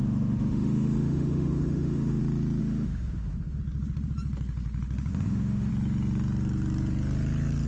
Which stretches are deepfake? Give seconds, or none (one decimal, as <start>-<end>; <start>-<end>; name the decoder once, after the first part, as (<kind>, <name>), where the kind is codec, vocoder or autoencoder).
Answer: 0.0-2.2 (autoencoder, DAC-VAE); 2.6-3.6; 5.1-5.7